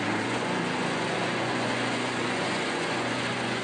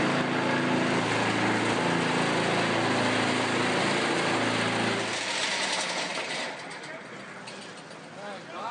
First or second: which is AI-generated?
first